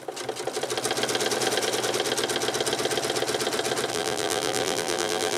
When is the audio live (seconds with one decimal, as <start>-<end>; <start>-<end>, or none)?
0.0-3.9